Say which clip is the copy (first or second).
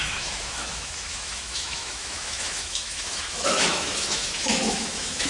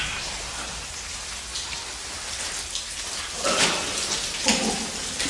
first